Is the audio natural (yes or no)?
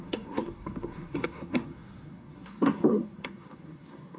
no